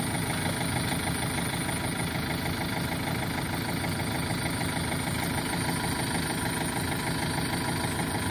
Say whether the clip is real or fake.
real